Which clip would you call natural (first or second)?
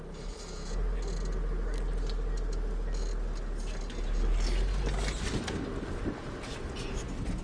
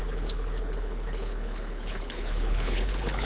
first